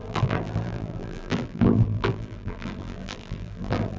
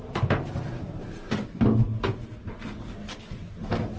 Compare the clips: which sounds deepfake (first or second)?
first